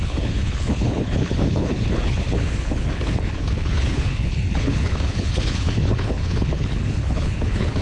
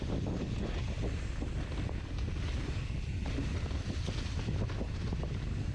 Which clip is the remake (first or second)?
first